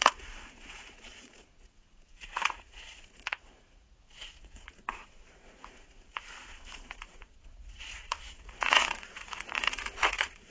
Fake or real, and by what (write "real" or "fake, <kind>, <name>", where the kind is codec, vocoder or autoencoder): fake, vocoder, Vocos